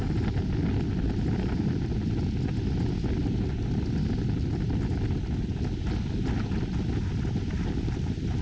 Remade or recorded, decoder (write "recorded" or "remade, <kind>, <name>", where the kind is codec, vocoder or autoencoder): recorded